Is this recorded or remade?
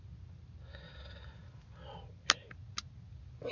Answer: recorded